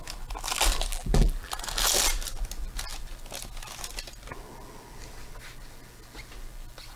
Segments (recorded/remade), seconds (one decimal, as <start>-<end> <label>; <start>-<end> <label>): 0.0-0.9 recorded; 0.9-1.5 remade; 1.5-7.0 recorded